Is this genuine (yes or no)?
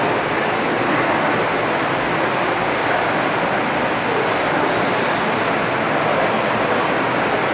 yes